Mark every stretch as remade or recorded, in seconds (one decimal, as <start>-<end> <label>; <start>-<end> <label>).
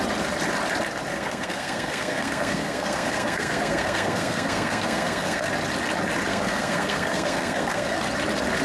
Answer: 0.0-1.1 recorded; 1.1-5.5 remade; 5.5-6.3 recorded; 6.3-8.0 remade; 8.0-8.6 recorded